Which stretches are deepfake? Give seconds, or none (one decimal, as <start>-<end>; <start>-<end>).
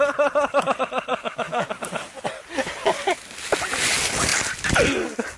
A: 1.1-1.7